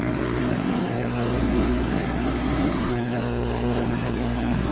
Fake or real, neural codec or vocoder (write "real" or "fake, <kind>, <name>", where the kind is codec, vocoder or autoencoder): fake, codec, SNAC